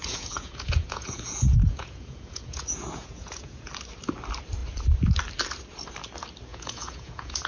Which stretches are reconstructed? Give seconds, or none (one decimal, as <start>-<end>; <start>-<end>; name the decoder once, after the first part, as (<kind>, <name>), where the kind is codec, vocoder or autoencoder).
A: 0.0-3.7 (vocoder, Vocos); 6.5-7.5